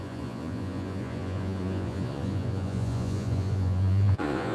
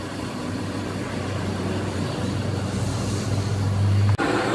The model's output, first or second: first